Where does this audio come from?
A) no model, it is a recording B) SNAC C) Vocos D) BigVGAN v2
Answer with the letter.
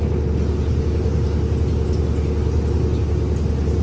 A